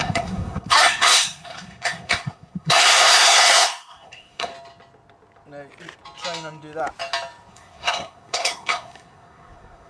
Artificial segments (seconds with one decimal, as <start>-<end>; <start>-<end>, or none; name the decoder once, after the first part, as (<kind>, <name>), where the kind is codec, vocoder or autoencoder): 0.0-4.5 (codec, SNAC); 7.5-9.9